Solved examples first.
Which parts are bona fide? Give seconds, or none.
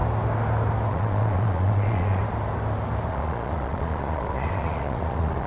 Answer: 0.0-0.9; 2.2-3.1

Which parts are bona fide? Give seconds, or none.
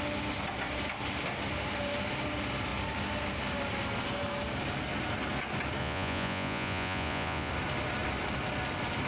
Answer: 0.0-5.8; 7.5-9.1